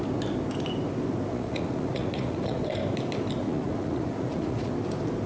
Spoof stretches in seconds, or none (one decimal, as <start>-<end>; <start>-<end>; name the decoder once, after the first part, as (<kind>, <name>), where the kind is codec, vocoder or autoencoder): 1.3-2.6 (vocoder, Vocos); 3.4-4.7